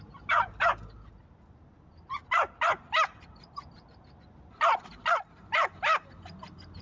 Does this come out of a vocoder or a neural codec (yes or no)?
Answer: no